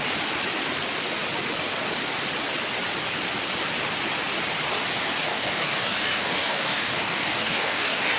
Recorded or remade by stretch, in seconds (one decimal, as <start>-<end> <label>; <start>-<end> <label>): 0.0-5.3 recorded; 5.3-8.2 remade